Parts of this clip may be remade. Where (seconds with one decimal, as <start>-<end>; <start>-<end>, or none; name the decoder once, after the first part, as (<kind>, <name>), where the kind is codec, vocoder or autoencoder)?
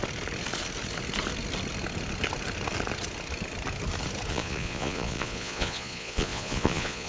4.3-7.1 (vocoder, Vocos)